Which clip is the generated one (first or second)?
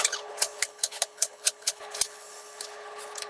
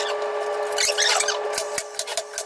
first